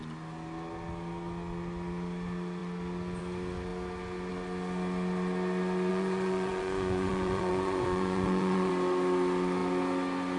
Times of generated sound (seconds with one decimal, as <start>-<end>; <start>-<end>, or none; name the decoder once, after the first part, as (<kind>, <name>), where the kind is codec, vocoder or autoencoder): 5.9-8.7 (vocoder, Vocos)